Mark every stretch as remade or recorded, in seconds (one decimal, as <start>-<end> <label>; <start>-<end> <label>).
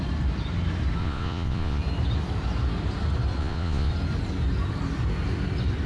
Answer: 0.0-1.0 recorded; 1.0-1.8 remade; 1.8-3.4 recorded; 3.4-3.9 remade; 3.9-5.9 recorded